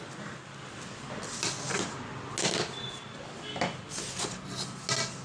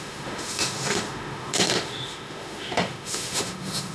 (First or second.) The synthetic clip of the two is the second